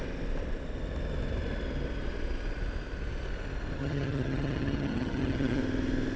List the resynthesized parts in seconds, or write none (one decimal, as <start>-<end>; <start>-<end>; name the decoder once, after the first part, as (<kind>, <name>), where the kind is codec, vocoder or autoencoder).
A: 3.8-5.6 (vocoder, HiFi-GAN)